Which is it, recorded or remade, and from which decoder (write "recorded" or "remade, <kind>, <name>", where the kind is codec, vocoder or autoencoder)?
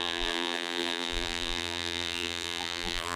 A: remade, vocoder, BigVGAN v2